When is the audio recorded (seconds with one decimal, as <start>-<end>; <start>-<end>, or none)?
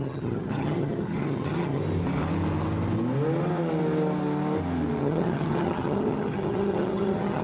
1.8-5.0